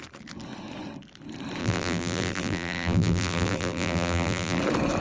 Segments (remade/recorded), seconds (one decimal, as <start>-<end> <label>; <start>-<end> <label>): 0.0-1.6 recorded; 1.6-4.6 remade; 4.6-5.0 recorded